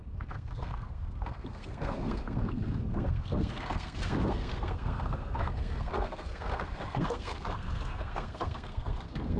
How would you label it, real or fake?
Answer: fake